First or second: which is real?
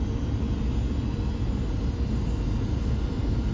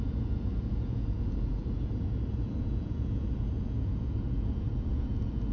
first